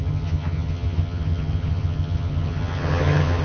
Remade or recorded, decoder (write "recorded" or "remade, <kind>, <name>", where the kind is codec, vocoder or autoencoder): remade, vocoder, HiFi-GAN